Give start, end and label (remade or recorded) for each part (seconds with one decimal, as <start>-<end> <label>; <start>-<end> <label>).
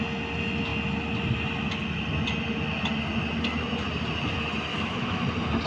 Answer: 0.0-4.7 recorded; 4.7-5.2 remade; 5.2-5.7 recorded